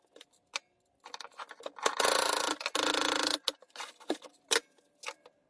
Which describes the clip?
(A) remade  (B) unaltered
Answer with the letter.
B